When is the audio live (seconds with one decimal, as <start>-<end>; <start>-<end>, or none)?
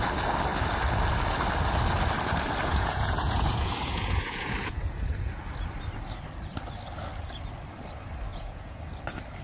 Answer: 0.0-2.7; 5.4-8.3; 8.8-9.4